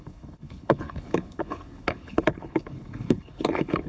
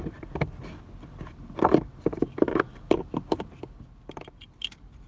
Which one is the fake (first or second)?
first